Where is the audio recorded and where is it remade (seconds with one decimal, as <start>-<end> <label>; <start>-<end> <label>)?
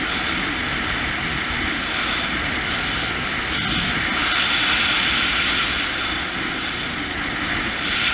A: 0.0-8.1 recorded